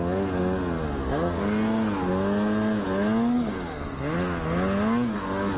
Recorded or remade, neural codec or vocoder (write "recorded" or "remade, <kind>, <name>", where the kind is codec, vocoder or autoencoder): recorded